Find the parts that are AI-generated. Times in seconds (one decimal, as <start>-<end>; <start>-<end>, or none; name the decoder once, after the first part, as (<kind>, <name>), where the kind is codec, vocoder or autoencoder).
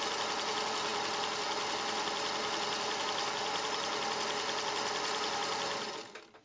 none